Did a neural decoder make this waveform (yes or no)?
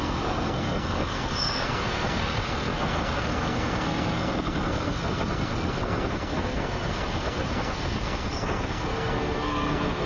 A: yes